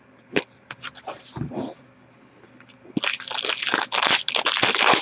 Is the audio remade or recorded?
recorded